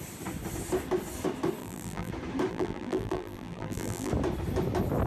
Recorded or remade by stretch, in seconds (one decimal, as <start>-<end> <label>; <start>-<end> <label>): 0.0-1.6 recorded; 1.6-2.1 remade; 2.1-2.5 recorded; 2.5-4.1 remade; 4.1-5.1 recorded